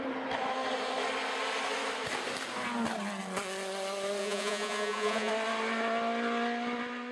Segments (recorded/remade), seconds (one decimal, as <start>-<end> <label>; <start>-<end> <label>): 0.0-4.2 recorded; 4.2-5.3 remade; 5.3-7.1 recorded